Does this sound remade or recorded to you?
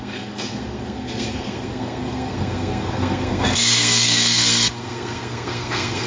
remade